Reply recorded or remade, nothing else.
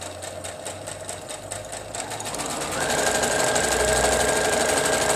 recorded